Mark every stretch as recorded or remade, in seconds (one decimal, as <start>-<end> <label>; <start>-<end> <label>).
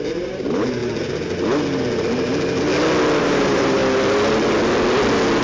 0.0-0.8 remade; 0.8-3.2 recorded; 3.2-3.8 remade; 3.8-5.4 recorded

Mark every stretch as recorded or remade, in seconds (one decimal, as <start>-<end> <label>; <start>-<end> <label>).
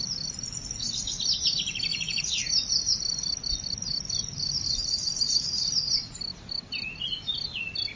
0.0-1.9 recorded; 1.9-2.4 remade; 2.4-8.0 recorded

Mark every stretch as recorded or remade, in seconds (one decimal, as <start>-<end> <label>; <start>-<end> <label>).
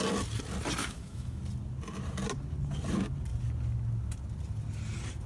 0.0-0.8 recorded; 0.8-1.4 remade; 1.4-5.3 recorded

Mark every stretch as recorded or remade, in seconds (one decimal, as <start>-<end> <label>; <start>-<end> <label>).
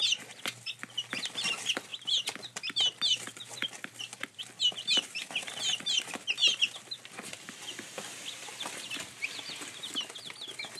0.0-1.9 recorded; 1.9-4.5 remade; 4.5-6.4 recorded; 6.4-9.4 remade; 9.4-10.8 recorded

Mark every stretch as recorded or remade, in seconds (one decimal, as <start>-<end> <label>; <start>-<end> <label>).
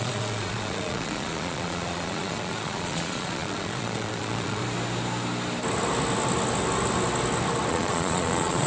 0.0-4.6 remade; 4.6-7.7 recorded; 7.7-8.7 remade